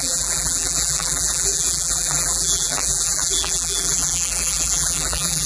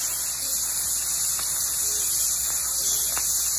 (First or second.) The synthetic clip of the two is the first